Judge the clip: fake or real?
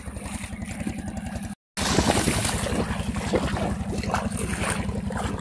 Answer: real